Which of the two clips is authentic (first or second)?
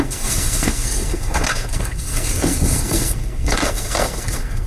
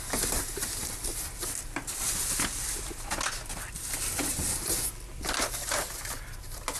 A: second